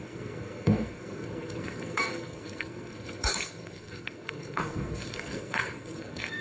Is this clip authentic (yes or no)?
no